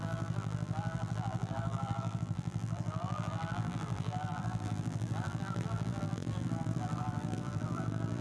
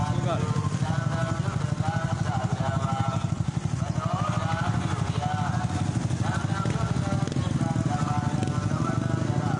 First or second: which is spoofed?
first